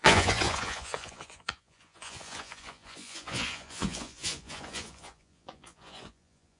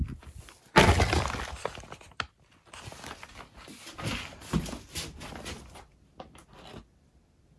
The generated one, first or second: first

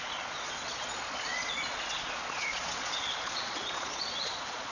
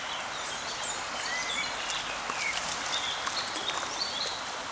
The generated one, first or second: first